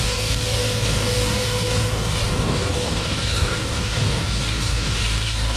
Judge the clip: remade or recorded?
remade